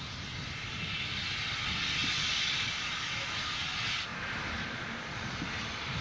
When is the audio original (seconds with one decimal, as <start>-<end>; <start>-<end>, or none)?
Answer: 0.0-6.0